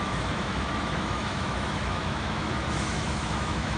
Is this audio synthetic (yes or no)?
yes